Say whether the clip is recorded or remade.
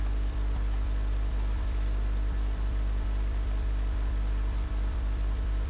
remade